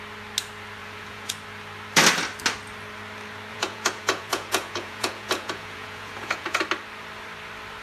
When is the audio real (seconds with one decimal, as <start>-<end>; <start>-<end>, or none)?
0.0-0.8; 1.3-3.5; 6.6-7.8